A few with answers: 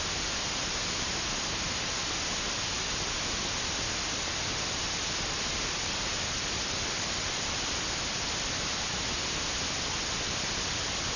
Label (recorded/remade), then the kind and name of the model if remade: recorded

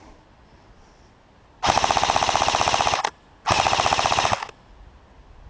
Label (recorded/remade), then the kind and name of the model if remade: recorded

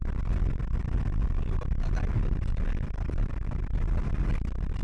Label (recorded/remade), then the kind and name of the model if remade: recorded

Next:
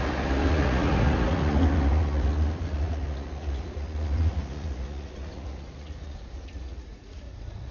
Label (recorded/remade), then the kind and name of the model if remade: remade, vocoder, Vocos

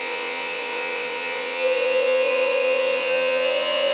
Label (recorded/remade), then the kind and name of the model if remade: remade, vocoder, WaveNeXt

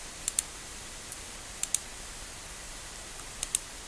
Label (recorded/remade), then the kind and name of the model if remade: remade, vocoder, BigVGAN v2